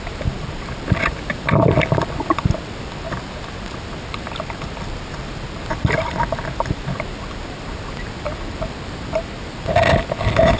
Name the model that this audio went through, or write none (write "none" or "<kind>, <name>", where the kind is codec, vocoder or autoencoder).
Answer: none